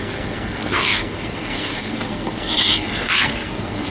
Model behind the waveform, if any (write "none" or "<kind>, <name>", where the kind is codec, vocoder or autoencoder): codec, SNAC